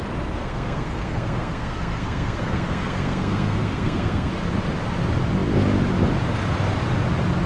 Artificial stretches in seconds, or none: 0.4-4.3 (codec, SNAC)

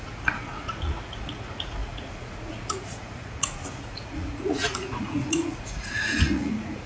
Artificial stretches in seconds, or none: 0.0-6.9 (vocoder, Vocos)

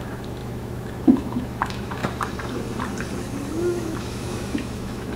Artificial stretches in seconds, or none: 0.0-2.0 (autoencoder, DAC-VAE); 3.5-5.2

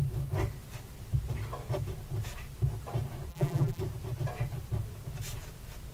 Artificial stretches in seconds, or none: 3.3-3.8 (vocoder, BigVGAN v2)

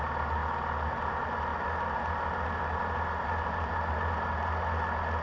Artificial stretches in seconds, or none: none